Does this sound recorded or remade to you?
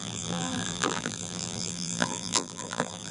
remade